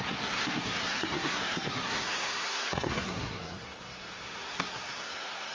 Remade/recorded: remade